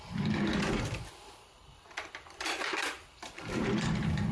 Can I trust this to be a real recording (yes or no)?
no